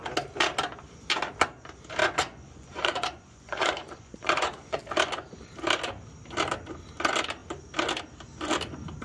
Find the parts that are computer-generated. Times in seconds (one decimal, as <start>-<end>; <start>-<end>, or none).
2.0-4.8